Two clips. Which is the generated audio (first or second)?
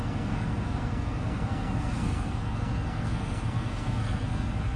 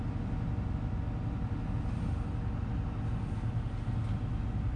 first